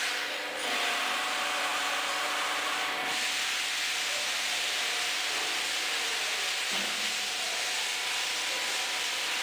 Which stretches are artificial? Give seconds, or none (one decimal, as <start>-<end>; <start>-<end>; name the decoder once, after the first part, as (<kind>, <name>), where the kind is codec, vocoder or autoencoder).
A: none